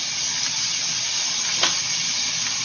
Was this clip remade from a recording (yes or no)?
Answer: no